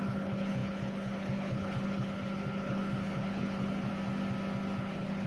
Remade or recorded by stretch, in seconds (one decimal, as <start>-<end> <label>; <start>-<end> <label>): 0.0-3.9 remade; 3.9-4.8 recorded; 4.8-5.3 remade